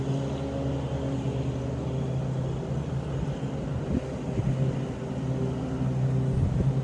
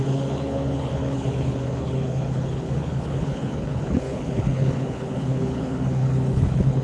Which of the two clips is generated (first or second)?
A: second